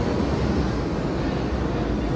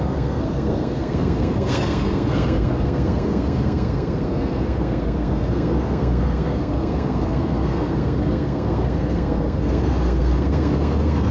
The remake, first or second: second